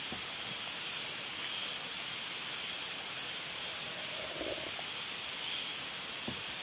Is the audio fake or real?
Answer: real